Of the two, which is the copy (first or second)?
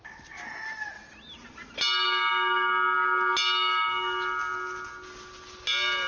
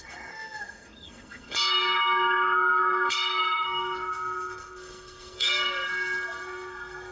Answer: second